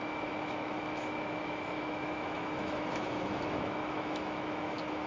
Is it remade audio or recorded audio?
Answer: remade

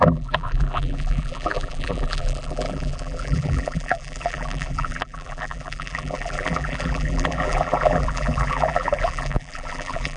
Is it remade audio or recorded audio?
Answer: remade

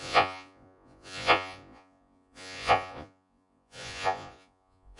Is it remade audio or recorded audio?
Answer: remade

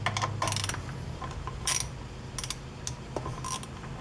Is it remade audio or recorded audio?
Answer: recorded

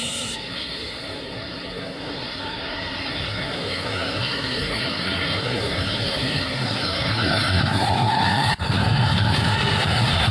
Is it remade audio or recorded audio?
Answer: remade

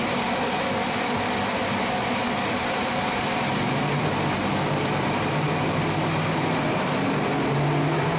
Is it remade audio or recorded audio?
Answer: recorded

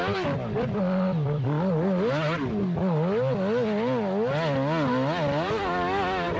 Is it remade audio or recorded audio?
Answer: recorded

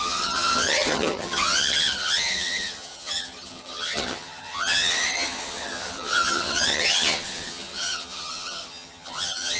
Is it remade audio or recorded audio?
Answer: remade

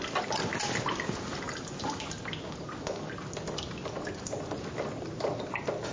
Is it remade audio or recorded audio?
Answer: recorded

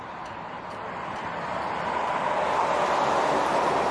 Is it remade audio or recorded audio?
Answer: recorded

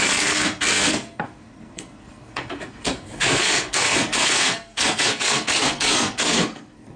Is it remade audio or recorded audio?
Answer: remade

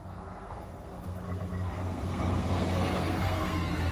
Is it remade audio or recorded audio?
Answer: remade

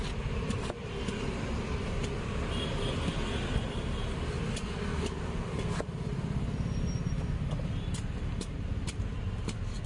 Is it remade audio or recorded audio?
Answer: recorded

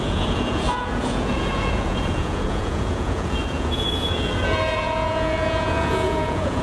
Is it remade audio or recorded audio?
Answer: remade